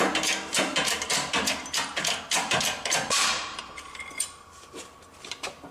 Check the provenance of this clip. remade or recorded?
remade